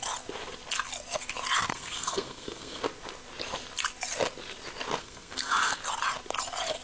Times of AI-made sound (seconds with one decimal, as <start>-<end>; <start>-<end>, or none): 1.7-2.8; 5.0-5.8